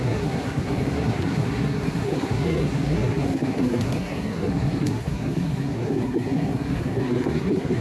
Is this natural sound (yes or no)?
no